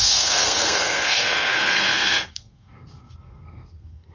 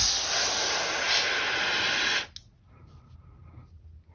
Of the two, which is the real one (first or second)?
second